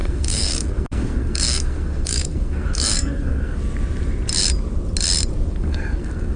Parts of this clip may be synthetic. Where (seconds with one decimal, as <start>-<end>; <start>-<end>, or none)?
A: 0.0-3.6; 5.5-6.4